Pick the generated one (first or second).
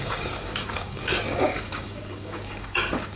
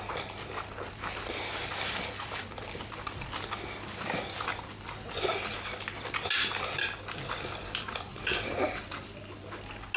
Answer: first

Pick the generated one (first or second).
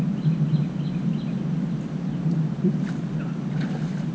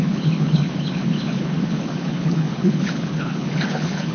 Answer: second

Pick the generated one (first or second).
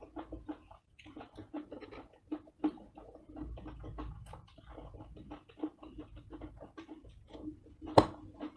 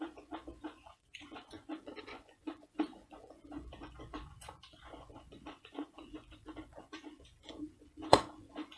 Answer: second